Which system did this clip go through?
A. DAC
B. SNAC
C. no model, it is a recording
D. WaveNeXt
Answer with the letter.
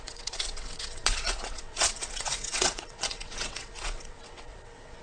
D